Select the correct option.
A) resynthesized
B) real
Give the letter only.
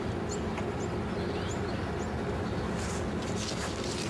B